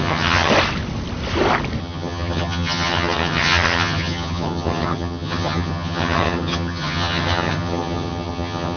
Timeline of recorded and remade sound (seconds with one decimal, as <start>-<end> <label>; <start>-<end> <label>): 0.0-0.5 remade; 0.5-1.8 recorded; 1.8-8.8 remade